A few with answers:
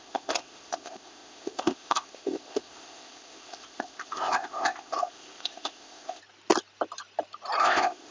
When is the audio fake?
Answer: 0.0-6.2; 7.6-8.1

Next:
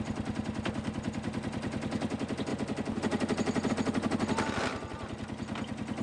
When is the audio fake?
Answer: none

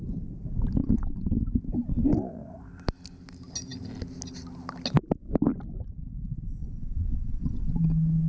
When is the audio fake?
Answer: 0.8-1.4; 6.6-7.7

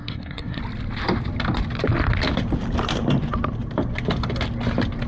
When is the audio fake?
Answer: 0.0-0.6

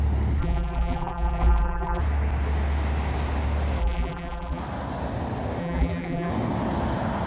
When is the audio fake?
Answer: 0.4-2.0; 3.8-4.6; 5.6-6.3

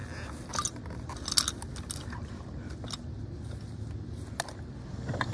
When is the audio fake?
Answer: none

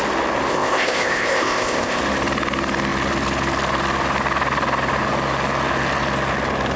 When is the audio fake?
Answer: 0.5-2.0

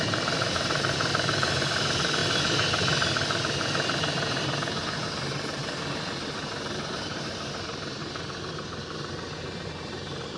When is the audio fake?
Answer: 0.0-2.2; 4.8-5.6; 6.1-8.0; 9.4-10.4